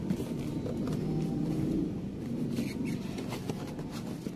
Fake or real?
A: real